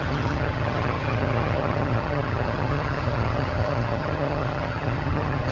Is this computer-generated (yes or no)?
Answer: yes